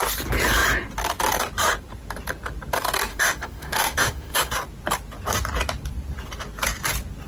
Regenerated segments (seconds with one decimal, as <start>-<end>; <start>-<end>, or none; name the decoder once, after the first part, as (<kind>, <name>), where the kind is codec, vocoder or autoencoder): 3.1-4.5 (autoencoder, DAC-VAE)